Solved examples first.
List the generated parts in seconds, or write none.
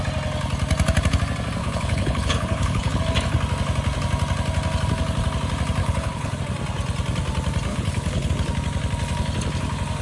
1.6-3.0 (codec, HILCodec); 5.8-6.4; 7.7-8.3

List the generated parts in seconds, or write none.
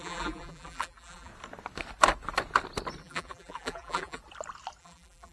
0.0-1.3 (vocoder, BigVGAN v2); 3.0-4.2; 4.8-5.3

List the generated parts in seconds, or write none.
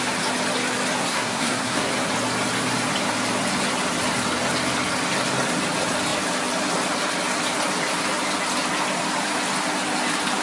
1.0-1.9 (codec, SNAC)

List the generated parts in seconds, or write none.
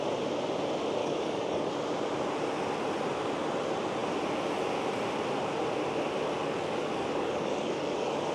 1.0-1.7 (codec, DAC); 6.4-8.3